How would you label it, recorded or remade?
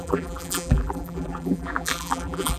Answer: remade